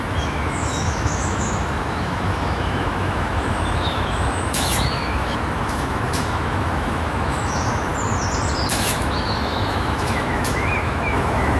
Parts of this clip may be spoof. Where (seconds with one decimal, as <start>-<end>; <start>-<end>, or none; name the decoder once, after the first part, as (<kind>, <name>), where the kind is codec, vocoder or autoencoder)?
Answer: 0.0-7.9 (autoencoder, DAC-VAE); 8.7-11.6